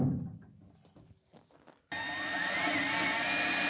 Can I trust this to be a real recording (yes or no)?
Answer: yes